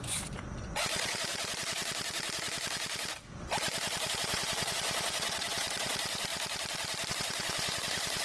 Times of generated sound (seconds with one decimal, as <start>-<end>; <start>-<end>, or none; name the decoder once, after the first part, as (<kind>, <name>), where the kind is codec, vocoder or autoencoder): 0.0-1.3 (vocoder, Vocos); 4.1-6.3; 7.1-8.2

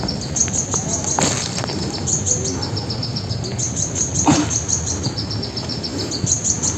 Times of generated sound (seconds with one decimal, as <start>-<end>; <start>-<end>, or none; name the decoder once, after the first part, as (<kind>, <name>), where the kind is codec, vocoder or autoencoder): none

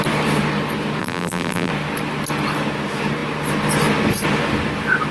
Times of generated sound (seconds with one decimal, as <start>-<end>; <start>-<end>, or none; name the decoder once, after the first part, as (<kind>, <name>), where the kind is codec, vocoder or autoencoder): 1.0-1.7 (vocoder, BigVGAN v2)

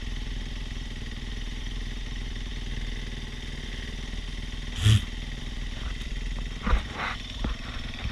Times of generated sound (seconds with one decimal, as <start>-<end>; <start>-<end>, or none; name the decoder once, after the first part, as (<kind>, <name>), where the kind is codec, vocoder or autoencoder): 0.0-2.5 (vocoder, BigVGAN v2); 5.4-6.1; 6.7-8.1